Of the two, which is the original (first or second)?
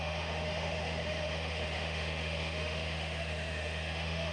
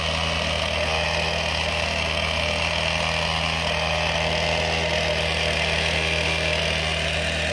second